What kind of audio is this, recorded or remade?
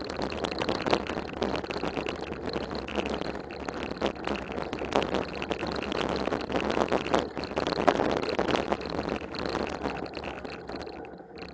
recorded